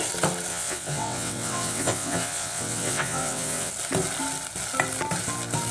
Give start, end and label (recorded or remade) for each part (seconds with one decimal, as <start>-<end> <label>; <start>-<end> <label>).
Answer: 0.0-0.5 recorded; 0.5-3.7 remade; 3.7-5.7 recorded